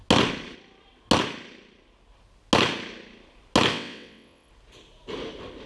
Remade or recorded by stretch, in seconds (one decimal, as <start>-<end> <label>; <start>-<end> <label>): 0.0-3.7 recorded; 3.7-4.5 remade; 4.5-5.7 recorded